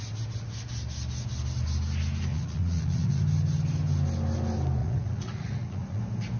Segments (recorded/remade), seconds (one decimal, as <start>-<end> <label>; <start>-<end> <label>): 0.0-2.3 recorded; 2.3-3.2 remade; 3.2-4.8 recorded; 4.8-6.0 remade; 6.0-6.4 recorded